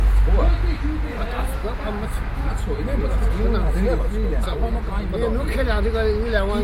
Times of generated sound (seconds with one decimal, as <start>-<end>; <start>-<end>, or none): none